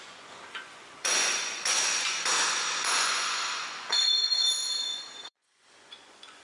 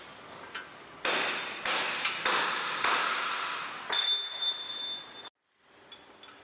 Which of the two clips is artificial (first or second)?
first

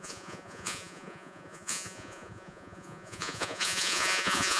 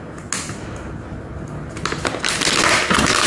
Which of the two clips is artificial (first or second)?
first